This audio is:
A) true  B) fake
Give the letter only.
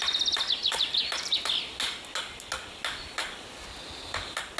A